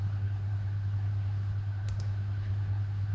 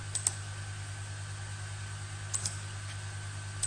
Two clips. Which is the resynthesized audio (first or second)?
first